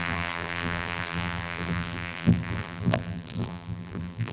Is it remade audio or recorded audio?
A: remade